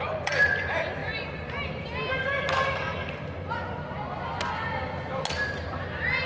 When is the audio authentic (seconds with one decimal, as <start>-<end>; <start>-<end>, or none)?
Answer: 0.0-6.3